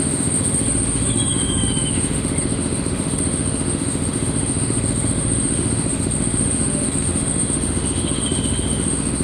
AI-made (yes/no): yes